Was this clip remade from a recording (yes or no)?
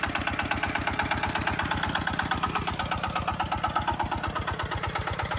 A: no